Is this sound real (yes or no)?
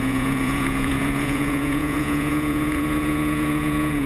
no